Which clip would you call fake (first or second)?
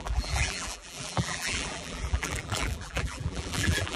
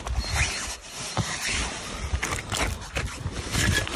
first